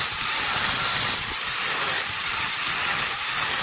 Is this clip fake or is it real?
real